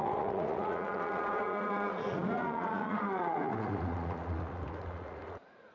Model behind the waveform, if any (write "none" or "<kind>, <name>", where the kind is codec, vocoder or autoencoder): vocoder, Vocos